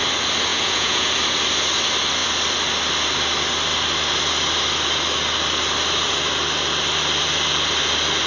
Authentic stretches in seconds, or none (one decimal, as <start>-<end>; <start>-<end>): 0.0-0.5; 1.1-8.3